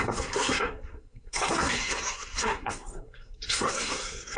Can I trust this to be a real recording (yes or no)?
no